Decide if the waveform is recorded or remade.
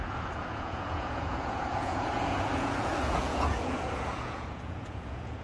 remade